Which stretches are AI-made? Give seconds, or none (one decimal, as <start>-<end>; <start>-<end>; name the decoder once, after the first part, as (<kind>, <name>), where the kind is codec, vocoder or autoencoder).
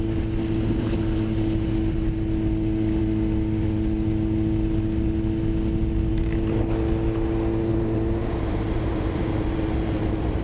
7.7-9.2 (vocoder, BigVGAN v2)